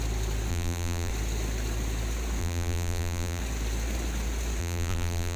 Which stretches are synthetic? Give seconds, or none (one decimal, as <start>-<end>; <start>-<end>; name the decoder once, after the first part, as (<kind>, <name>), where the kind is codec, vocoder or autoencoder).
0.5-1.1 (vocoder, BigVGAN v2); 2.4-3.4; 4.6-5.4